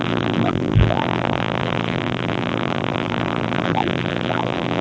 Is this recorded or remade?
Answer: remade